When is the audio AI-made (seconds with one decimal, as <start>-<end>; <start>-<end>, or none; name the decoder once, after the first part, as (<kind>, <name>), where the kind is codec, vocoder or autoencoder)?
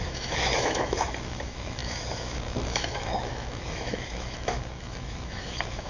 0.0-5.9 (autoencoder, DAC-VAE)